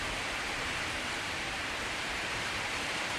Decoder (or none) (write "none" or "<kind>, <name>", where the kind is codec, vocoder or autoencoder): vocoder, BigVGAN v2